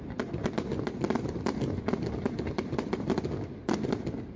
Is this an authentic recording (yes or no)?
yes